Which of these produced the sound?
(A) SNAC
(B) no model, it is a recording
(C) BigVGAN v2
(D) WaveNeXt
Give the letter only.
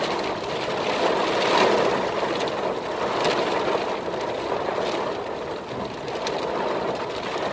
B